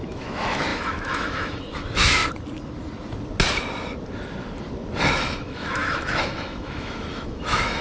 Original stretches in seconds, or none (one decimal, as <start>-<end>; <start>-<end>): 2.2-5.2